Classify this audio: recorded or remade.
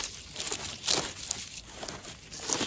recorded